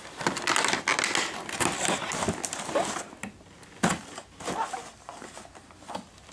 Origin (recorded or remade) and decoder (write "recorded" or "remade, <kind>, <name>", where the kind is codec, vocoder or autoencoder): recorded